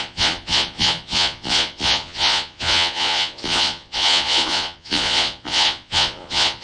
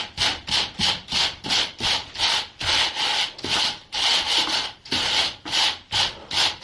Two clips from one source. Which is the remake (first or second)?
first